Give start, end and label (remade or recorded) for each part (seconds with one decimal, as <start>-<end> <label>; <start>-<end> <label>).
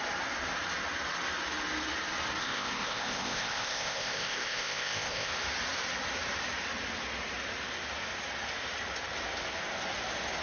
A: 0.0-2.4 recorded; 2.4-5.3 remade; 5.3-10.4 recorded